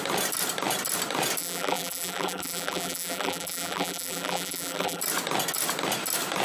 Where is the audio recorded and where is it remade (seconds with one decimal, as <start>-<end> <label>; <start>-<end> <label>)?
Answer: 0.0-1.4 recorded; 1.4-5.0 remade; 5.0-6.4 recorded